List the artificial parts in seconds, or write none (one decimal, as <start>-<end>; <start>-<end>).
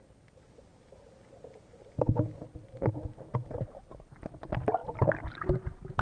none